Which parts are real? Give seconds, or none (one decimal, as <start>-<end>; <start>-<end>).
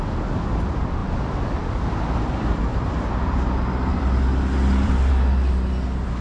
0.0-1.0; 2.9-3.9; 5.1-6.2